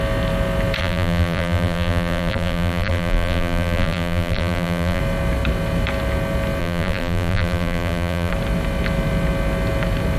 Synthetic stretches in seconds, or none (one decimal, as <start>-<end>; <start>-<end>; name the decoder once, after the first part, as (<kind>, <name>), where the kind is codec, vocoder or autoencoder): 0.8-5.0 (vocoder, BigVGAN v2); 6.6-8.3